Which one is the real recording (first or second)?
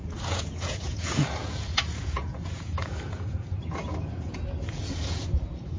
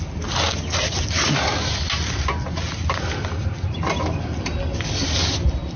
second